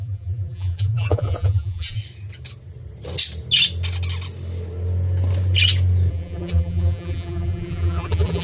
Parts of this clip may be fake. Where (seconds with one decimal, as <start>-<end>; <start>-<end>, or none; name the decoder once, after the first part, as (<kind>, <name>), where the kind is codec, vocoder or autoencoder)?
0.0-2.0 (vocoder, BigVGAN v2); 6.1-8.4